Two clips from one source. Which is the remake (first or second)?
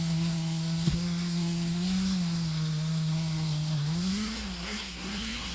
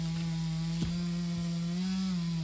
first